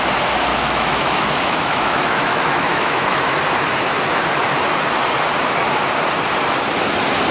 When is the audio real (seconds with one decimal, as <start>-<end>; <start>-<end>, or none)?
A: 0.0-0.5; 3.4-7.3